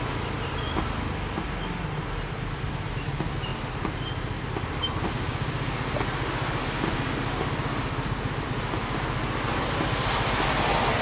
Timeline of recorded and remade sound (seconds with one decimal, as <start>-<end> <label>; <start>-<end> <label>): 0.0-11.0 recorded